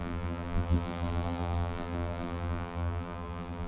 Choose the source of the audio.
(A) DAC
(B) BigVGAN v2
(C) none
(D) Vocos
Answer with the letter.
B